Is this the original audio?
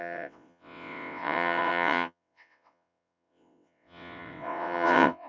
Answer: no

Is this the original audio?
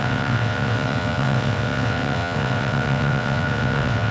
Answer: no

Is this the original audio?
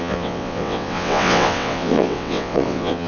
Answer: no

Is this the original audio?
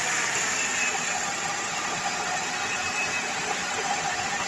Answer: yes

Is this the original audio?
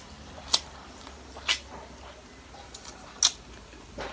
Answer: yes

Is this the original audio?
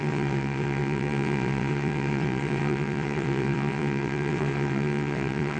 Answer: no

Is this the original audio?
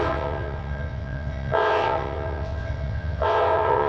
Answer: no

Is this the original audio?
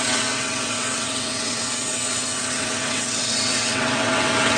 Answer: no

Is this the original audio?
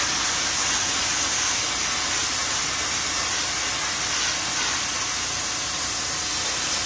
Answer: yes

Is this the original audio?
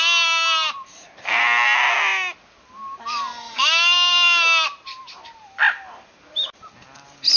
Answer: yes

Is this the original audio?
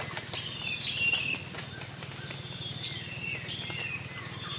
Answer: yes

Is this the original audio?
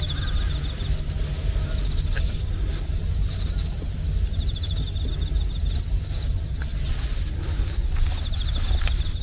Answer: yes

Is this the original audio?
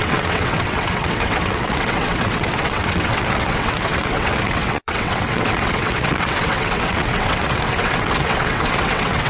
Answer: no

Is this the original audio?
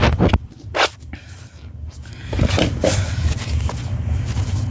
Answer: yes